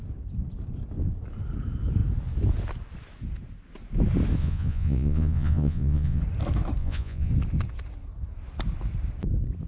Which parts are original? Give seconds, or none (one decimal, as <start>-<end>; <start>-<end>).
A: 0.0-4.4; 6.2-6.8; 7.3-9.7